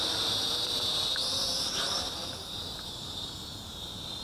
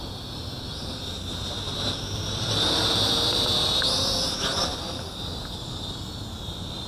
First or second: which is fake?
first